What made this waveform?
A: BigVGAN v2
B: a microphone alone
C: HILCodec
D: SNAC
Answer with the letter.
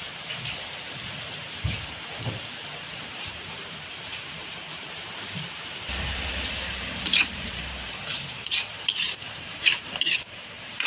A